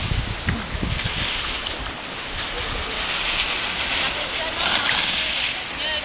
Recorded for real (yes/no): yes